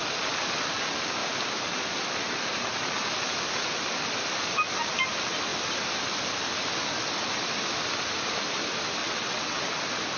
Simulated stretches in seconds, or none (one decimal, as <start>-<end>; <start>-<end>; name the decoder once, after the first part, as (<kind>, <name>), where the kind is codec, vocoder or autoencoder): 9.0-9.6 (vocoder, WaveNeXt)